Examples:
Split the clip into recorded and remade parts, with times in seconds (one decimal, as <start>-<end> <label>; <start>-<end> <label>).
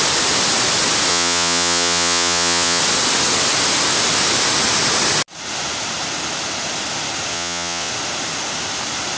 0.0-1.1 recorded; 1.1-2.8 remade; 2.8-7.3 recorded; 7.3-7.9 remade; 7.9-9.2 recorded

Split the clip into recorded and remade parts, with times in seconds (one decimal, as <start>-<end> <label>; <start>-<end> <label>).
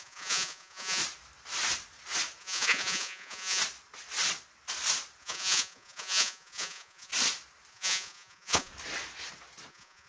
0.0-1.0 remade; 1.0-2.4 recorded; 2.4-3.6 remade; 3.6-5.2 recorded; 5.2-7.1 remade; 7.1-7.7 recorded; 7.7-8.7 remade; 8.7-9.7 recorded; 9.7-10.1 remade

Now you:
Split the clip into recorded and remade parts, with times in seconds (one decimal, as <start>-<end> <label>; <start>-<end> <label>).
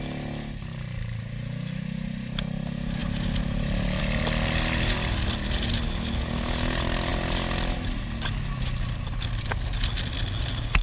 0.0-10.8 recorded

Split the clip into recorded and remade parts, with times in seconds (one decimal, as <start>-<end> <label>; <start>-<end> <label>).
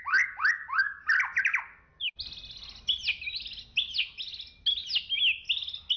0.0-6.0 recorded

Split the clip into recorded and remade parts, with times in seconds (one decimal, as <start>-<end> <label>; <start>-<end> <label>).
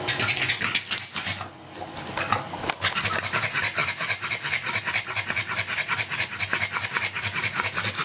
0.0-8.0 recorded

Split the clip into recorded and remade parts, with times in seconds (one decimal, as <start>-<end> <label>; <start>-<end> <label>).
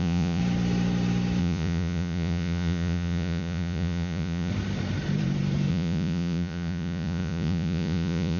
0.0-0.4 remade; 0.4-1.4 recorded; 1.4-4.5 remade; 4.5-5.7 recorded; 5.7-8.4 remade